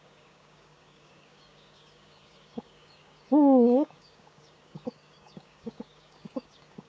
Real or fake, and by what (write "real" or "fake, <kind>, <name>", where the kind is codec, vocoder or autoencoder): fake, codec, DAC